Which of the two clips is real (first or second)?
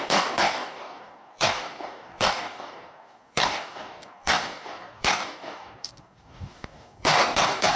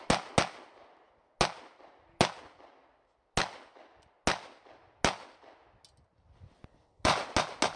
second